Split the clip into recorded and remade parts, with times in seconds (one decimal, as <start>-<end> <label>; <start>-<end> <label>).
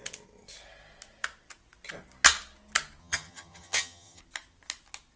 0.0-3.0 recorded; 3.0-4.2 remade; 4.2-5.2 recorded